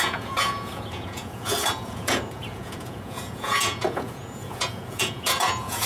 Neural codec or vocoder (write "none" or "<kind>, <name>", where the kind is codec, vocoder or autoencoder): vocoder, Vocos